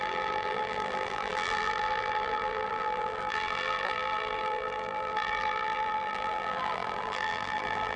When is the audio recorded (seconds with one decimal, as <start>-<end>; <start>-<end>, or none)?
none